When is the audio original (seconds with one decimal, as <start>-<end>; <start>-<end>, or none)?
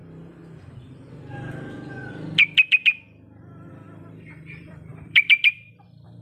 0.0-3.7